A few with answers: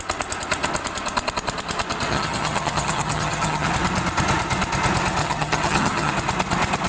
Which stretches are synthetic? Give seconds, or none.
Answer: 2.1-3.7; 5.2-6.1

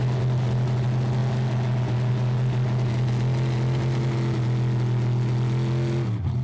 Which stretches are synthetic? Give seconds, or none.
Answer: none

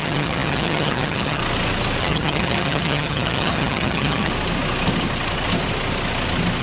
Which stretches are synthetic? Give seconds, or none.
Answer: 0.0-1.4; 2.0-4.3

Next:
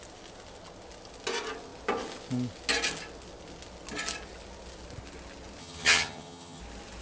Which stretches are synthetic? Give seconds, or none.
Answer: 5.6-6.6

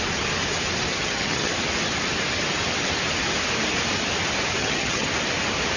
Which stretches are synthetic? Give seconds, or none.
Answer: 0.9-1.5; 4.6-5.1

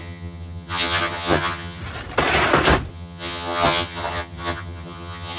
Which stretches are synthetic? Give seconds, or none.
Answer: 0.0-1.8; 2.9-5.4